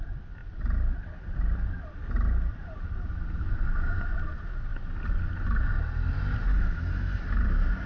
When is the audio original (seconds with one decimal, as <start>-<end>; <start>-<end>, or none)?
0.0-6.5; 7.2-7.9